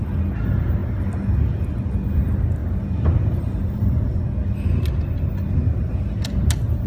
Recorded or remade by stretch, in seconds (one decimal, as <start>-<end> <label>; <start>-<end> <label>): 0.0-2.6 recorded; 2.6-4.2 remade; 4.2-5.7 recorded; 5.7-6.4 remade; 6.4-6.9 recorded

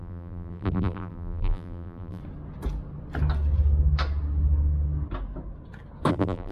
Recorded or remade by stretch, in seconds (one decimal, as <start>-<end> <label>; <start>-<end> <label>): 0.0-2.2 remade; 2.2-6.1 recorded; 6.1-6.5 remade

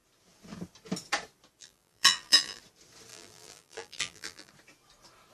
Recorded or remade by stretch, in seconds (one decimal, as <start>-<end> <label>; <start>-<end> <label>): 0.0-1.6 recorded; 1.6-2.6 remade; 2.6-3.1 recorded; 3.1-4.5 remade; 4.5-5.3 recorded

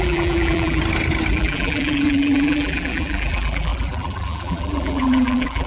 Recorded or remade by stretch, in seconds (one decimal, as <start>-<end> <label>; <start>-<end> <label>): 0.0-0.8 remade; 0.8-1.3 recorded; 1.3-5.7 remade